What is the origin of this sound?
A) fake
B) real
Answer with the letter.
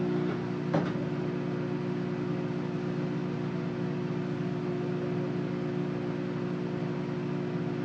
B